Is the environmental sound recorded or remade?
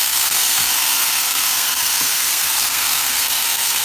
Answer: remade